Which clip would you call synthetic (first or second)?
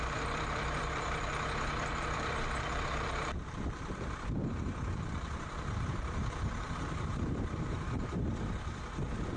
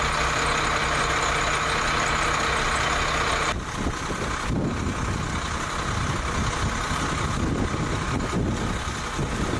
first